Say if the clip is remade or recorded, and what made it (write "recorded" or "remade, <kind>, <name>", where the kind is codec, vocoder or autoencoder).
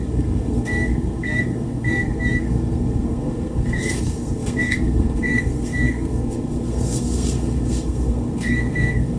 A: remade, codec, SNAC